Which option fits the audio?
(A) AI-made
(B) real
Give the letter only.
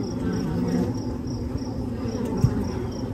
A